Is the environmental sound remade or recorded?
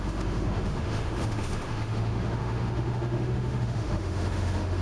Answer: remade